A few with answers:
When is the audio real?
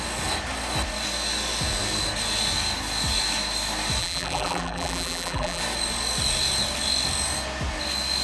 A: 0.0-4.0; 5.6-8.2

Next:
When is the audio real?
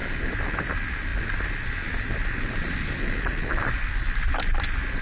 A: 0.5-5.0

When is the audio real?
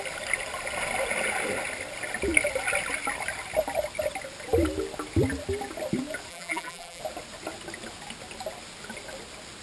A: 0.0-6.3; 7.0-9.6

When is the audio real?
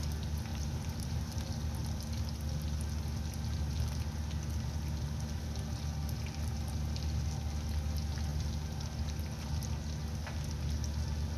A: 0.0-0.5; 1.5-11.4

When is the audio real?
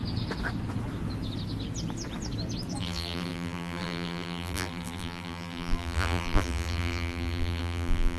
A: 0.0-2.8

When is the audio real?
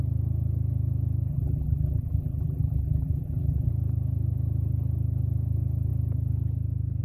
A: 0.0-1.3; 3.7-7.0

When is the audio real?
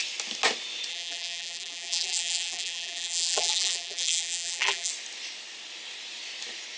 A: 0.0-0.9; 4.9-6.8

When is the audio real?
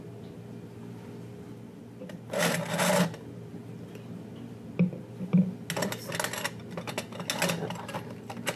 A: 0.0-8.6